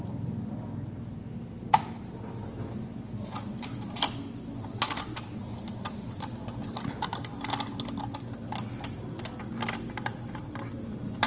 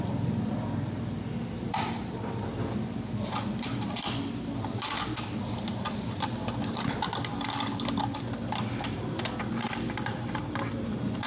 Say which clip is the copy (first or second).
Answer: second